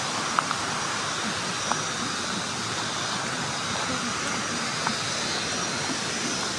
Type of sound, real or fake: real